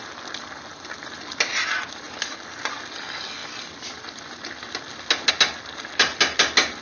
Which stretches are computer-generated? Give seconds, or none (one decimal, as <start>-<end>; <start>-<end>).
none